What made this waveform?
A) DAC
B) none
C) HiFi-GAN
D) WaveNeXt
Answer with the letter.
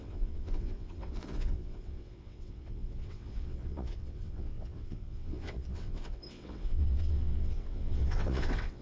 D